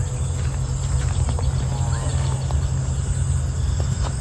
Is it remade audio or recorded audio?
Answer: recorded